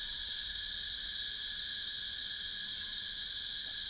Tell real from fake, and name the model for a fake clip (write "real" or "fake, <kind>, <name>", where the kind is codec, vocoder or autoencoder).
real